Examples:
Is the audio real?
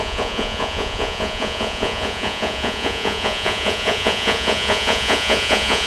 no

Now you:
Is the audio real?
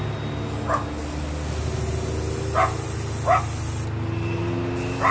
yes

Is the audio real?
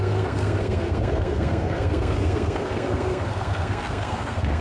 no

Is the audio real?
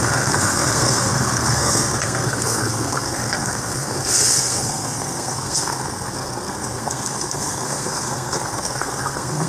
no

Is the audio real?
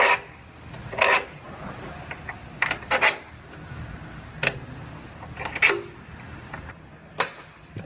yes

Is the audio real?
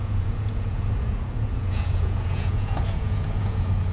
no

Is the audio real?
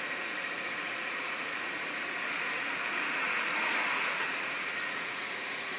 no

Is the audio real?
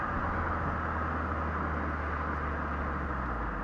yes